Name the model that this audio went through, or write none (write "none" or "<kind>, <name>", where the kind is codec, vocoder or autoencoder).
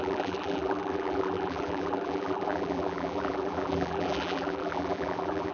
vocoder, BigVGAN v2